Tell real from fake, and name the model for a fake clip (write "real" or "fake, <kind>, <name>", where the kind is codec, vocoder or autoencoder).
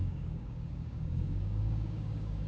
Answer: fake, codec, DAC